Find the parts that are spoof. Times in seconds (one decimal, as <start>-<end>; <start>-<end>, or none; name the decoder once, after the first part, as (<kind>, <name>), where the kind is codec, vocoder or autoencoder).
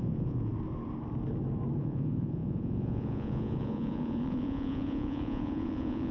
0.0-0.5 (vocoder, Vocos); 1.8-6.1